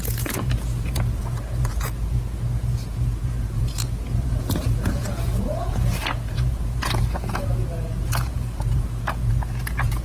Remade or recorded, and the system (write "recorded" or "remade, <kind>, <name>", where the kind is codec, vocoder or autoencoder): remade, vocoder, Vocos